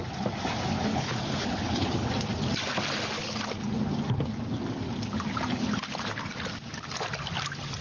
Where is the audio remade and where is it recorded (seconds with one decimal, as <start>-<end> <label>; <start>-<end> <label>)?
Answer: 0.0-0.9 recorded; 0.9-2.1 remade; 2.1-7.8 recorded